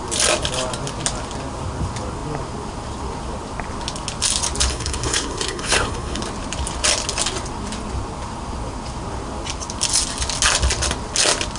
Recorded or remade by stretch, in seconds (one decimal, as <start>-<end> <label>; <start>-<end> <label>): 0.0-4.7 recorded; 4.7-6.2 remade; 6.2-11.6 recorded